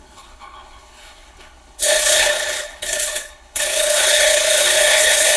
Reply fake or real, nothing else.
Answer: fake